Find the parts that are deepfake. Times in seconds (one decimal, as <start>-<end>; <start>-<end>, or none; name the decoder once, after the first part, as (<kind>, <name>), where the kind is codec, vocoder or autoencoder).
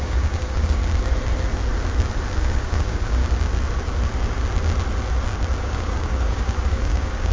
0.0-0.8 (codec, DAC); 2.4-3.2; 5.6-7.3